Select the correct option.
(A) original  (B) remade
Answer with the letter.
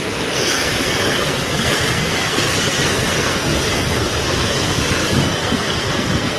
B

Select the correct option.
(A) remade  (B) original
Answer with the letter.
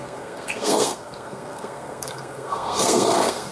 A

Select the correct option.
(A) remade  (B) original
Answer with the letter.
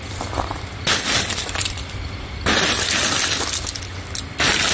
B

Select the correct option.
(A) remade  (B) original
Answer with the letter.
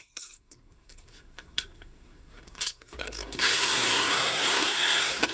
A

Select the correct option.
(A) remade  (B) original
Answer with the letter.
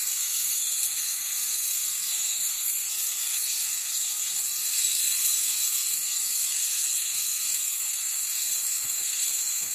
A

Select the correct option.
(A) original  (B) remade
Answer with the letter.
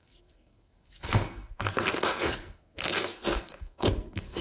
B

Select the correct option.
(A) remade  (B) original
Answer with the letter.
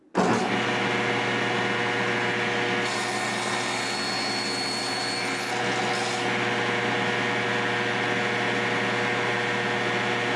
B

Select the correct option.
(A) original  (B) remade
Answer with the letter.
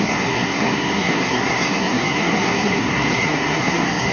B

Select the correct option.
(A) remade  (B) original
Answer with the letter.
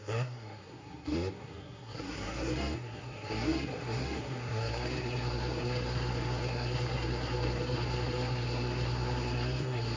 A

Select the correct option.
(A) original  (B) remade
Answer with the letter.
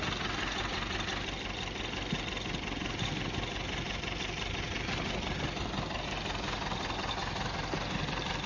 A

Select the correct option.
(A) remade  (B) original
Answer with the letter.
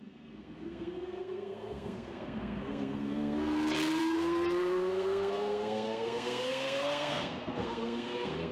A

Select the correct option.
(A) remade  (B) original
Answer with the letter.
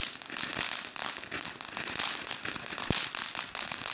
B